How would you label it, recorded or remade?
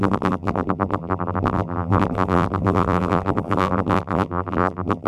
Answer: remade